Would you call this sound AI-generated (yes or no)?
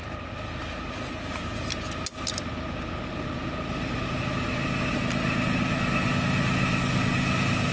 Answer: no